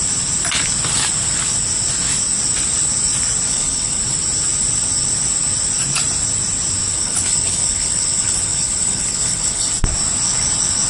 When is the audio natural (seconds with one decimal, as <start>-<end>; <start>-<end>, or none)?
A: 0.0-3.5; 4.0-6.9; 9.7-10.9